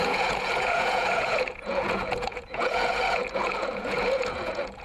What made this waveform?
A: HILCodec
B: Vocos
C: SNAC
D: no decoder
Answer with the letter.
B